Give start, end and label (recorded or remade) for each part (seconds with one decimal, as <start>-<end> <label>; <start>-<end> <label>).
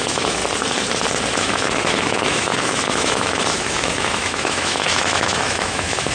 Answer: 0.0-0.4 remade; 0.4-1.4 recorded; 1.4-6.1 remade